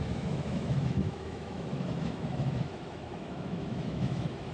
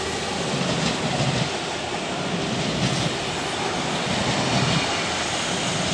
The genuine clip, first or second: second